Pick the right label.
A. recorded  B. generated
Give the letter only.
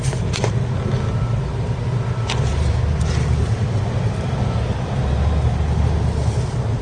A